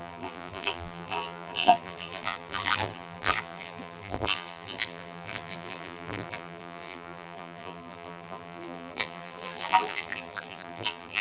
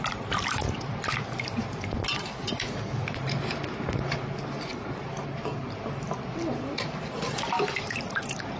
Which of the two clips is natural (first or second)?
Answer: second